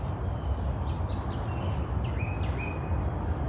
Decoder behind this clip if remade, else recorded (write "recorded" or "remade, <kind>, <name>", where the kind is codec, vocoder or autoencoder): recorded